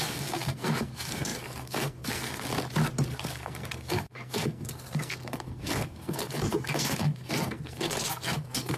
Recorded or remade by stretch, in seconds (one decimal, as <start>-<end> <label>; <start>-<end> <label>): 0.0-2.5 remade; 2.5-3.1 recorded; 3.1-8.8 remade